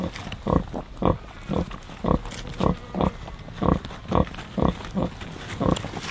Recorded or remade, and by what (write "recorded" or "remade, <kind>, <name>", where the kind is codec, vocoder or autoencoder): recorded